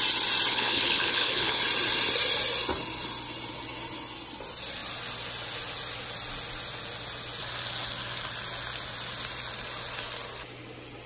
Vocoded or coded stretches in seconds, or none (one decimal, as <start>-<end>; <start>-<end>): 0.5-1.6